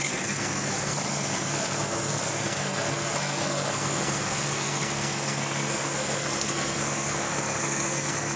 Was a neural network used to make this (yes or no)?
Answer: yes